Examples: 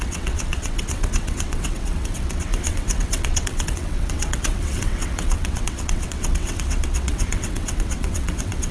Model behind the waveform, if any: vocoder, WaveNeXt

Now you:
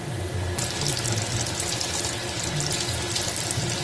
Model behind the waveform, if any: none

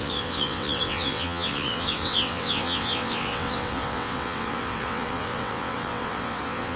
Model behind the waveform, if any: vocoder, WaveNeXt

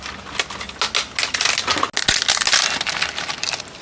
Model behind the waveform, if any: none